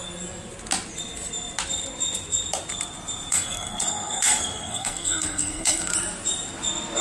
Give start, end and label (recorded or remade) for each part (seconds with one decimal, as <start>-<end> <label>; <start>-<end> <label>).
0.0-3.3 recorded; 3.3-5.9 remade; 5.9-7.0 recorded